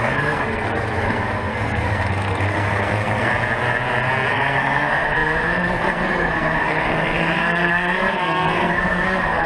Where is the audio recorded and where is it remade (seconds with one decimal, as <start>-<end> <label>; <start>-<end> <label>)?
0.0-3.3 remade; 3.3-4.3 recorded; 4.3-9.5 remade